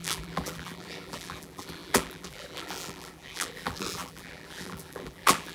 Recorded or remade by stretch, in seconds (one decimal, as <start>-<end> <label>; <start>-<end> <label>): 0.0-5.5 remade